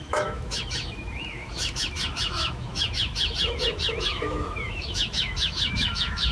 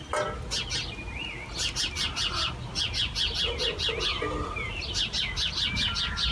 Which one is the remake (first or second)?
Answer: first